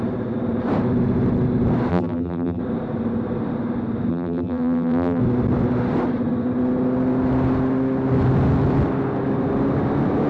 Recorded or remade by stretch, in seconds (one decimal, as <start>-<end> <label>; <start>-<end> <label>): 0.0-1.9 recorded; 1.9-2.6 remade; 2.6-4.1 recorded; 4.1-5.2 remade; 5.2-10.3 recorded